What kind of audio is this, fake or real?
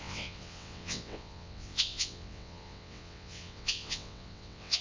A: fake